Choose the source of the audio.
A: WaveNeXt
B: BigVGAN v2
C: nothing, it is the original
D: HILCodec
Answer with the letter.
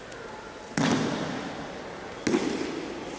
C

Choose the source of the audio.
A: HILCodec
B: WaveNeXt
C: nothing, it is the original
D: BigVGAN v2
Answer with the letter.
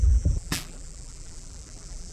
D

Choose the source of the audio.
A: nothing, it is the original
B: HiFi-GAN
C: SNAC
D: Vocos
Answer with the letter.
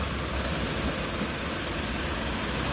A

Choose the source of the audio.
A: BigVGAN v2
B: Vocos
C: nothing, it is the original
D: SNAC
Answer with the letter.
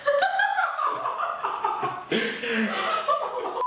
C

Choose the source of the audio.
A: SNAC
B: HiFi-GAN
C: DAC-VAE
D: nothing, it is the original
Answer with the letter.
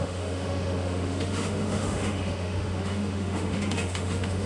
C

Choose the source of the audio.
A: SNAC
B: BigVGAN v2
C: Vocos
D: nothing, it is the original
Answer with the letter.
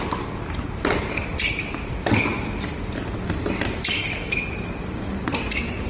D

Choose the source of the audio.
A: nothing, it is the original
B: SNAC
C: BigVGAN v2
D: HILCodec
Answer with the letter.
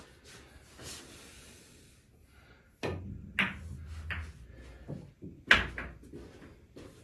A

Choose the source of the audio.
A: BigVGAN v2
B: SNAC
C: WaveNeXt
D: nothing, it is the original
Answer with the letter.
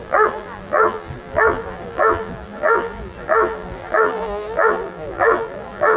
A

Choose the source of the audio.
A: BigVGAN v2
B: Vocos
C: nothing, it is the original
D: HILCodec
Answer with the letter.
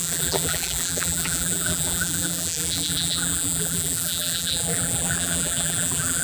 A